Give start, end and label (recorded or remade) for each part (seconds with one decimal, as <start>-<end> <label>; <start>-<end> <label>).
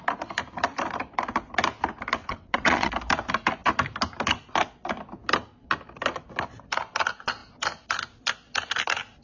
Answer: 0.0-2.1 recorded; 2.1-2.9 remade; 2.9-9.2 recorded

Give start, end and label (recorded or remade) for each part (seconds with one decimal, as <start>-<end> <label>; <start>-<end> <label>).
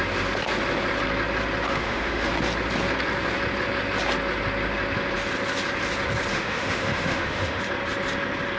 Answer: 0.0-1.7 recorded; 1.7-2.3 remade; 2.3-6.3 recorded; 6.3-7.6 remade; 7.6-8.6 recorded